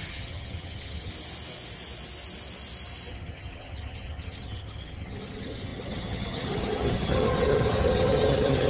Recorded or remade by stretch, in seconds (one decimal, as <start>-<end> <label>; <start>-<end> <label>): 0.0-1.1 remade; 1.1-3.1 recorded; 3.1-8.7 remade